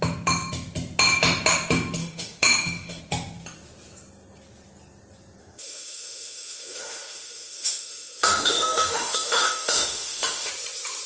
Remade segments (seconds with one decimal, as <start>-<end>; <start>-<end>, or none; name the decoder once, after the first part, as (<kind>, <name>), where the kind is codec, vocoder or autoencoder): 2.0-3.0 (autoencoder, DAC-VAE); 5.4-10.5